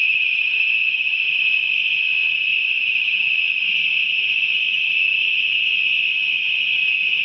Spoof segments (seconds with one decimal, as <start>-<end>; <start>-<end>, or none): 0.0-1.6